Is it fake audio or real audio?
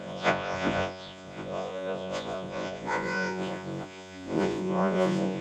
fake